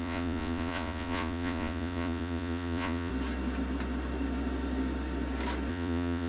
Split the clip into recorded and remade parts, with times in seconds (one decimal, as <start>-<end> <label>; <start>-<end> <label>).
0.0-3.1 remade; 3.1-5.7 recorded; 5.7-6.3 remade